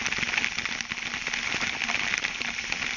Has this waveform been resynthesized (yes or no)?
no